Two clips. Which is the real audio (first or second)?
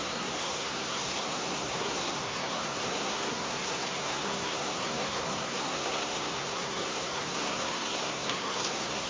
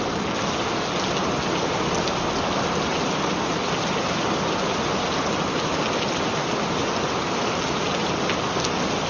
second